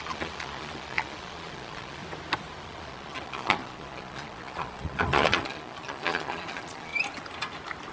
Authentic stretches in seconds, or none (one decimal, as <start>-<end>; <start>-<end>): 2.0-2.6; 6.9-7.9